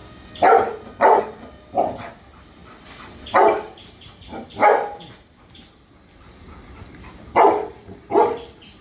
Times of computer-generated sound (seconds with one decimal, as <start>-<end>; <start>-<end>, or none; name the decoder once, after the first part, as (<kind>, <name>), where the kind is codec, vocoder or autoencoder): none